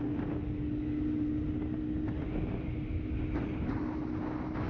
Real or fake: real